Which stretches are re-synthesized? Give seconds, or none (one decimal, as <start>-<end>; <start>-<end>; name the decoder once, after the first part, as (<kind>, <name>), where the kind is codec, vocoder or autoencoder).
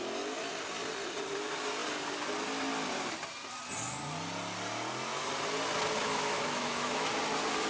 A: 6.0-7.1 (autoencoder, DAC-VAE)